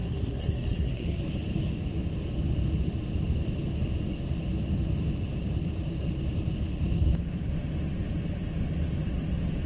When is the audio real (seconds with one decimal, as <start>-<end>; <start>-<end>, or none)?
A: 1.2-9.7

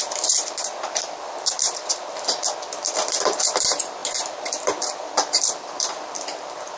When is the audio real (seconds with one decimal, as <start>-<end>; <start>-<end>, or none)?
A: none